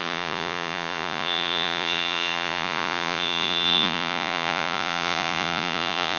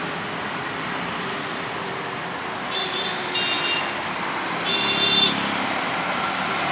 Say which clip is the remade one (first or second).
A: first